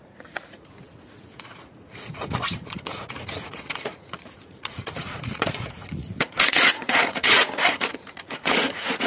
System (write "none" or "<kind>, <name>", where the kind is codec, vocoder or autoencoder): vocoder, Vocos